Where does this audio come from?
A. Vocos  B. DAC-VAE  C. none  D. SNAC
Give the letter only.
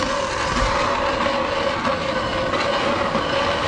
C